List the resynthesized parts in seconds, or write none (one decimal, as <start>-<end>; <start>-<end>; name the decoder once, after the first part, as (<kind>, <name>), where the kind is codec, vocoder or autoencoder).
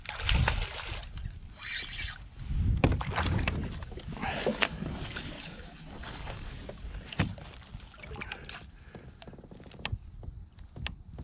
4.5-6.5 (codec, DAC)